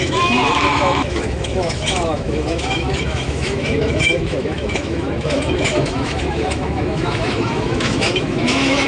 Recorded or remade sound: remade